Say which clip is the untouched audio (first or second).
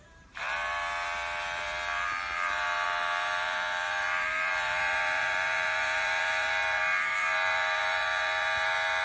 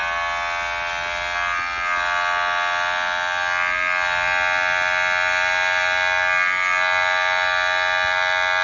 second